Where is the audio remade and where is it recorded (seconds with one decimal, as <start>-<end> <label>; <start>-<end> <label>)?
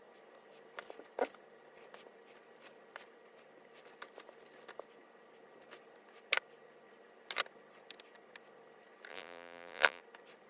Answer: 0.0-9.1 recorded; 9.1-10.0 remade; 10.0-10.5 recorded